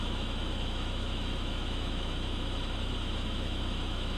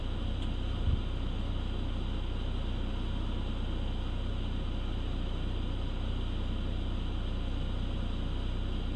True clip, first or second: second